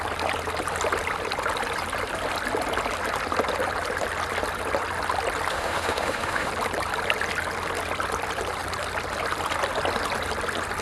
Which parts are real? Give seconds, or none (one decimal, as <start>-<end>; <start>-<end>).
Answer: 0.0-5.5; 6.5-10.8